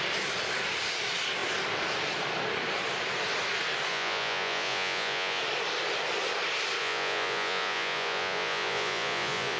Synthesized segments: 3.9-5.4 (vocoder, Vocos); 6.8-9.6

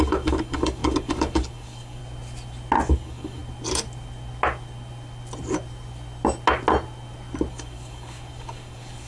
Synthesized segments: 0.0-2.0 (codec, DAC); 2.9-3.4; 7.5-9.1

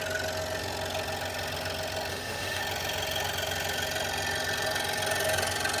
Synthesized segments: 2.1-2.6 (autoencoder, DAC-VAE)

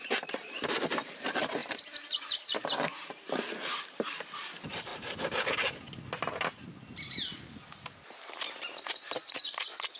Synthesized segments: 0.0-4.9 (vocoder, BigVGAN v2); 8.3-10.0

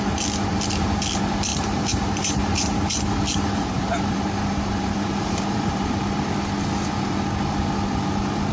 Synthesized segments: 1.5-5.9 (vocoder, BigVGAN v2)